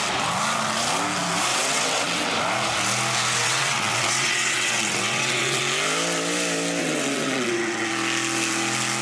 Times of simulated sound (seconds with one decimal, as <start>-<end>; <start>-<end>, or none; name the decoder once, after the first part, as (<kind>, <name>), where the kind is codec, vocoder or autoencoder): 1.5-2.3 (vocoder, WaveNeXt); 3.4-5.6; 6.8-7.9